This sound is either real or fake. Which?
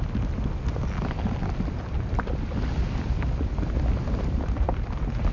real